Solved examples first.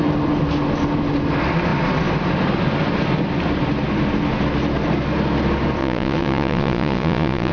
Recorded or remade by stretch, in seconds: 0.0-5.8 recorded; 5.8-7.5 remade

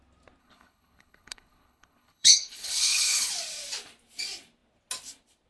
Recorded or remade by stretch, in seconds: 0.0-0.4 recorded; 0.4-3.3 remade; 3.3-5.5 recorded

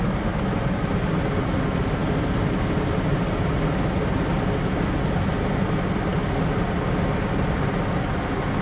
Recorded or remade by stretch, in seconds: 0.0-8.6 recorded

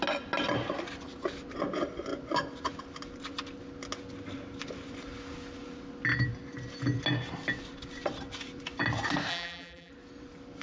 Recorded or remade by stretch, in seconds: 0.0-9.3 recorded; 9.3-9.9 remade; 9.9-10.6 recorded

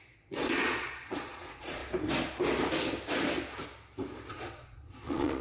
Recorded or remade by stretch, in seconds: 0.0-1.8 remade; 1.8-4.3 recorded; 4.3-5.4 remade

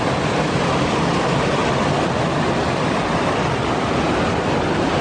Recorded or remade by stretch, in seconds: 0.0-5.0 recorded

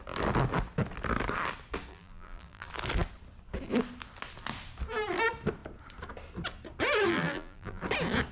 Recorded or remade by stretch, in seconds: 0.0-1.9 recorded; 1.9-2.7 remade; 2.7-7.1 recorded; 7.1-7.8 remade; 7.8-8.3 recorded

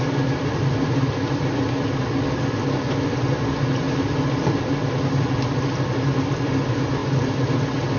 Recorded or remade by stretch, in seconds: 0.0-8.0 recorded